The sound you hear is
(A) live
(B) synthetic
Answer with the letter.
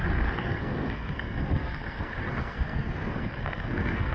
B